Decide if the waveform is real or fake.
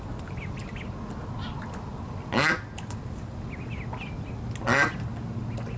real